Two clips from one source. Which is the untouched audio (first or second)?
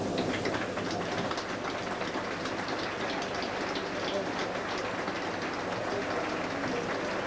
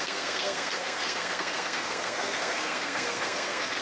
first